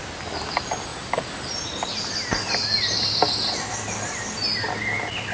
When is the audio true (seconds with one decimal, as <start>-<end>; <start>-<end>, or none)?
0.0-5.3